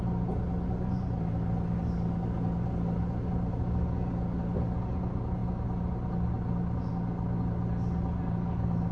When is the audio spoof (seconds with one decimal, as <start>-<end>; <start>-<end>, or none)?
none